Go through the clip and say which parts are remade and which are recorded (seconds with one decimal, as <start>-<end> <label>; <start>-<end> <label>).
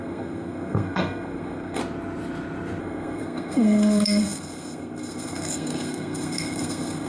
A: 0.0-1.8 remade; 1.8-2.8 recorded; 2.8-7.1 remade